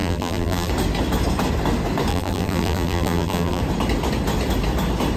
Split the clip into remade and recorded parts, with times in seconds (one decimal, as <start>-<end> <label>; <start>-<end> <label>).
0.0-0.7 remade; 0.7-2.1 recorded; 2.1-3.6 remade; 3.6-5.2 recorded